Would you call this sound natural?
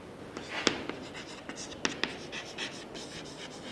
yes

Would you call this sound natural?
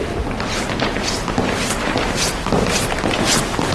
yes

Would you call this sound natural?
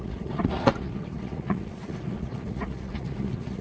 no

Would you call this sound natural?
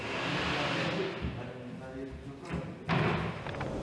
yes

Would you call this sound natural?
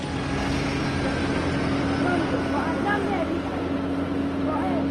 yes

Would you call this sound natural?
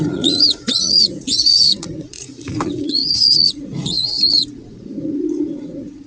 no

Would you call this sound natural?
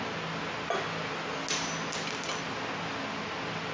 yes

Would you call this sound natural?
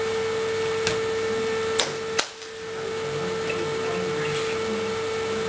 yes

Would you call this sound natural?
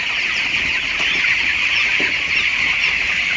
yes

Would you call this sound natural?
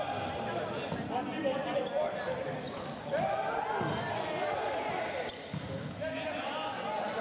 yes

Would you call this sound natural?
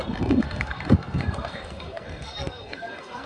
no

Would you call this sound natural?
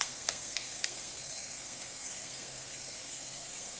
no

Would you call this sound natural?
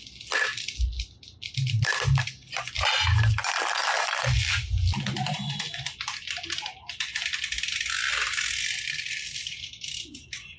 yes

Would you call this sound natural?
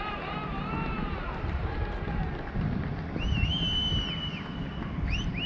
no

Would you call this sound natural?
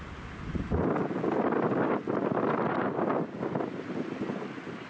yes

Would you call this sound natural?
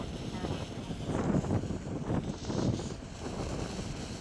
yes